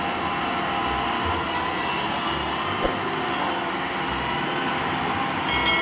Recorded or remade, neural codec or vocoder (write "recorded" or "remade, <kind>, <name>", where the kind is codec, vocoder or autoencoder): recorded